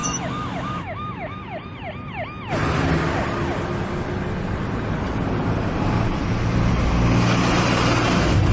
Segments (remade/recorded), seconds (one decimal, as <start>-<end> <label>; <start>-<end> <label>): 0.0-1.4 remade; 1.4-8.5 recorded